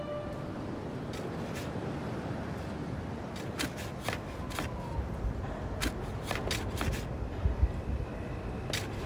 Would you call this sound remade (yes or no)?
no